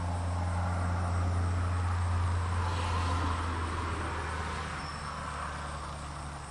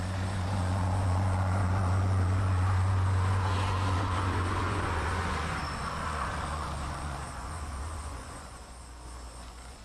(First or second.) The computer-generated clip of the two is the second